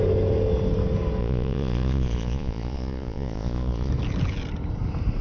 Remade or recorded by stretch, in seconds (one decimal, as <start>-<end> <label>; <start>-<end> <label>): 0.0-1.2 recorded; 1.2-3.9 remade; 3.9-5.2 recorded